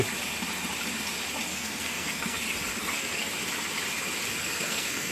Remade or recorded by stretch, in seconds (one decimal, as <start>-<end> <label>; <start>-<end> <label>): 0.0-1.5 recorded; 1.5-2.4 remade; 2.4-2.8 recorded; 2.8-3.3 remade; 3.3-4.4 recorded; 4.4-5.1 remade